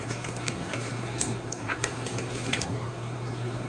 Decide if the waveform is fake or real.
fake